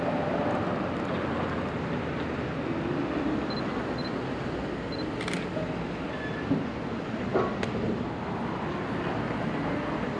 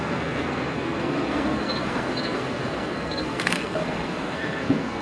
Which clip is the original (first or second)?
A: first